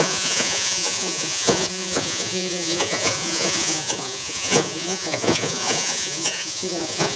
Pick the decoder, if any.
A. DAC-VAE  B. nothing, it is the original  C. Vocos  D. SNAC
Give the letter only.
C